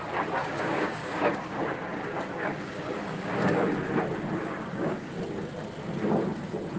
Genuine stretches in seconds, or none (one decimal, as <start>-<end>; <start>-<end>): 0.0-0.4; 3.4-4.5; 5.1-6.8